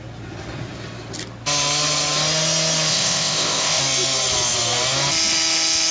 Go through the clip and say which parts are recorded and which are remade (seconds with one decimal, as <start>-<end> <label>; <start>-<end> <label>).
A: 0.0-2.9 recorded; 2.9-3.8 remade; 3.8-5.9 recorded